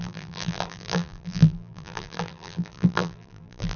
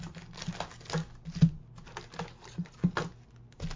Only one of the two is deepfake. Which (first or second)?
first